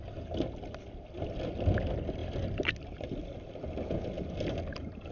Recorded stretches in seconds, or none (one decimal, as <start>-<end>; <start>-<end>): 0.0-5.1